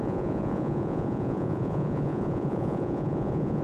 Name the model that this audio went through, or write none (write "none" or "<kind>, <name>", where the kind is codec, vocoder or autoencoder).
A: vocoder, Vocos